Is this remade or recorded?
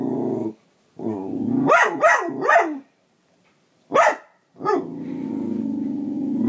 recorded